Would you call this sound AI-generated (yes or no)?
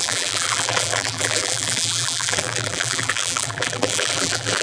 yes